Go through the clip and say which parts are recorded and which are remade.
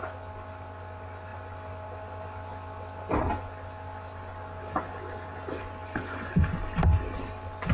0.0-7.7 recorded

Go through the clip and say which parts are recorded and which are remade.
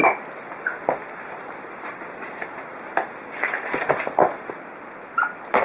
0.0-5.6 recorded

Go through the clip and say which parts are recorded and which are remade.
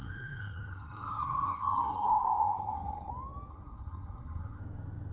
0.0-3.1 remade; 3.1-3.5 recorded; 3.5-4.6 remade; 4.6-5.1 recorded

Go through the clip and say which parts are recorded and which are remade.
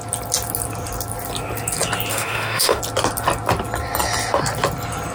0.0-2.1 recorded; 2.1-2.8 remade; 2.8-5.1 recorded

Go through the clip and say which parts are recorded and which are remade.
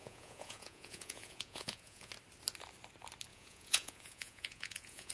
0.0-2.1 remade; 2.1-3.3 recorded; 3.3-5.1 remade